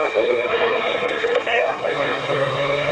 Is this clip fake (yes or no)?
yes